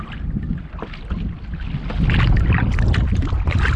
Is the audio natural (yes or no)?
yes